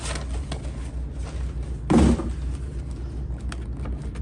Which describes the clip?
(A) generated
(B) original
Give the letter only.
B